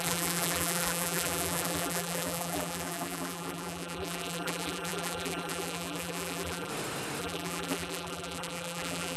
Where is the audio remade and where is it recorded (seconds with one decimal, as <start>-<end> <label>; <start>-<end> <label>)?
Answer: 0.0-6.7 remade; 6.7-7.2 recorded; 7.2-9.2 remade